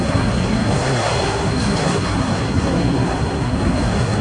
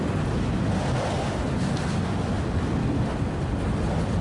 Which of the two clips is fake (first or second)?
first